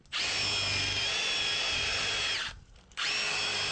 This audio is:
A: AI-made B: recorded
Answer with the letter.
B